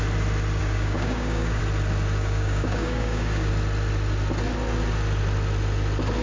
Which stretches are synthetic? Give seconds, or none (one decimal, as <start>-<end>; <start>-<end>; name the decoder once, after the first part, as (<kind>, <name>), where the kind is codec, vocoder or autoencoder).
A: 0.6-1.6 (codec, DAC); 2.2-3.5